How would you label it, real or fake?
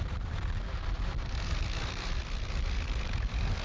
real